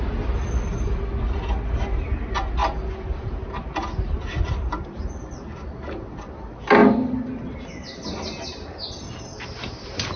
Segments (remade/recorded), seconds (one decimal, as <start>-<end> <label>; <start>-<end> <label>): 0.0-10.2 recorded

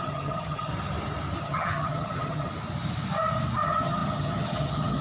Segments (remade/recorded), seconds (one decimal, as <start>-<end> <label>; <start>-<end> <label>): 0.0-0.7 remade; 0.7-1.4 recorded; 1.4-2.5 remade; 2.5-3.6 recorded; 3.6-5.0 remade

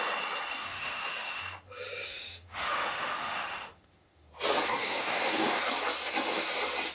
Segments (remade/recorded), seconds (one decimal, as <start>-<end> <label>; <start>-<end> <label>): 0.0-0.6 recorded; 0.6-1.4 remade; 1.4-2.1 recorded; 2.1-4.3 remade; 4.3-4.8 recorded; 4.8-5.6 remade; 5.6-6.9 recorded